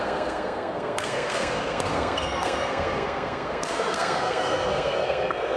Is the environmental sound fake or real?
fake